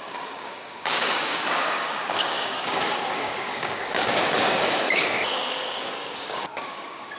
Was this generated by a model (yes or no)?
yes